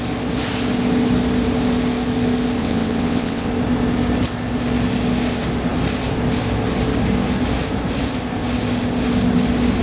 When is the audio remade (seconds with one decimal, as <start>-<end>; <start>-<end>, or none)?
2.6-3.5